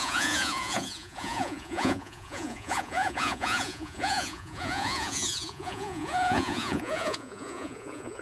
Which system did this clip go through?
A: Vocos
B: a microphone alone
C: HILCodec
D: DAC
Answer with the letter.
A